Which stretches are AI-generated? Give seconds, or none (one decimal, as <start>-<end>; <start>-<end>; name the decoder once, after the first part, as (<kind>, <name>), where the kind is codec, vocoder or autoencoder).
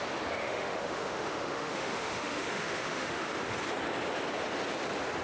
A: 0.4-3.5 (autoencoder, DAC-VAE)